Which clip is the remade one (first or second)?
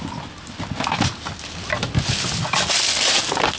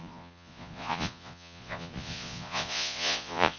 second